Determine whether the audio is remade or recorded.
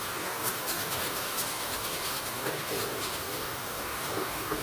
remade